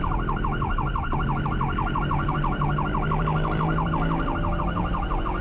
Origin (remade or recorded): recorded